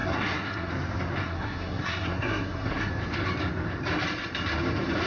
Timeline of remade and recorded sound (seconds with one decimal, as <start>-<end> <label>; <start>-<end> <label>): 0.0-0.7 remade; 0.7-1.2 recorded; 1.2-2.9 remade; 2.9-5.1 recorded